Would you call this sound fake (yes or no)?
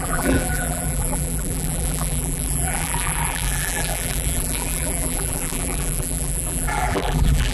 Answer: yes